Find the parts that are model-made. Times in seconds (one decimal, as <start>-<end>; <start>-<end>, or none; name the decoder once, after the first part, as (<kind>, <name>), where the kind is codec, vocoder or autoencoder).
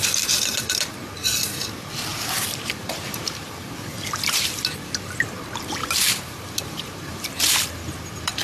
2.1-3.5 (vocoder, BigVGAN v2); 3.9-4.6; 5.8-7.3